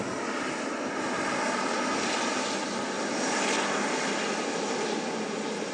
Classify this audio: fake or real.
real